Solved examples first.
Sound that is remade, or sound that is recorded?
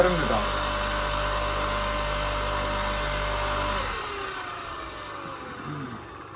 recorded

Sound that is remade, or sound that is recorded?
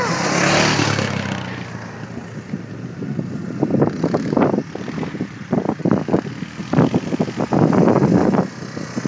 recorded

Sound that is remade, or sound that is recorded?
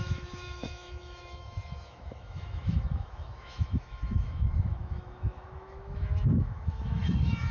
remade